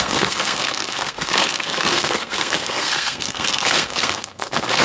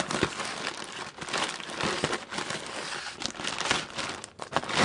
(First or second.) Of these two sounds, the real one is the second